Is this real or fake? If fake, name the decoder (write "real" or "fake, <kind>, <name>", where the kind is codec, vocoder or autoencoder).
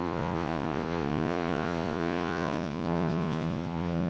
fake, vocoder, Vocos